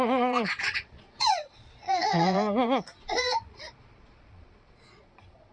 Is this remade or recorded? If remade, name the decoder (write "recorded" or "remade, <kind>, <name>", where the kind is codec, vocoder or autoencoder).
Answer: remade, vocoder, Vocos